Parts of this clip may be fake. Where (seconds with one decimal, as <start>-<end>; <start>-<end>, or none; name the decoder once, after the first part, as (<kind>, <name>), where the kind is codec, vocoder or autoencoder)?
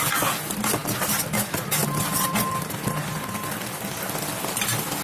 none